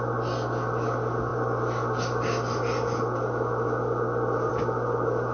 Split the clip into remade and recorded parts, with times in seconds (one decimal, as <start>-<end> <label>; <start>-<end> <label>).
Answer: 0.0-5.3 recorded